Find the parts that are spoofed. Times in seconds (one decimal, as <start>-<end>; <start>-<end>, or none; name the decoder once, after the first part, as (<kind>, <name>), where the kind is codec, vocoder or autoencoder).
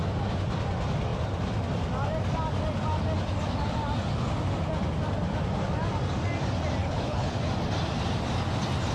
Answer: 6.8-7.4 (codec, HILCodec)